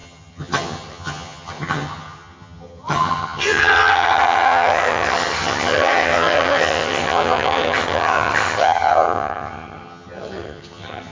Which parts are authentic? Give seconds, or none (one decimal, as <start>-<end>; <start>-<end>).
none